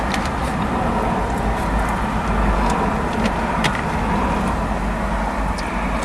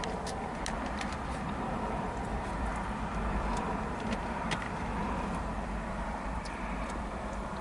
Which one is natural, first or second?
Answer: first